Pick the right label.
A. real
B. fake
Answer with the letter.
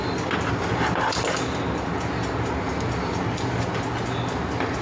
B